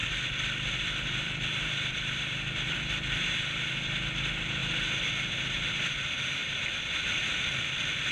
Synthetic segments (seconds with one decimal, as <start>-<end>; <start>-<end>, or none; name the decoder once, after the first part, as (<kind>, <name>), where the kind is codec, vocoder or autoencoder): 0.0-3.2 (vocoder, BigVGAN v2)